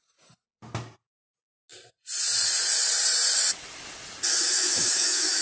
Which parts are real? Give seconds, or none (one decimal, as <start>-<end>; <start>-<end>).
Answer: 0.0-4.3